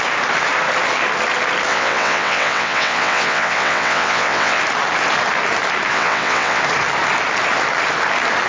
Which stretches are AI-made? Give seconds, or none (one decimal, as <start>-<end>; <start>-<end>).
1.7-4.6; 5.9-6.6